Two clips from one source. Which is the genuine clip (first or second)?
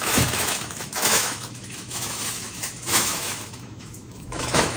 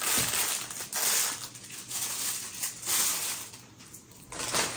second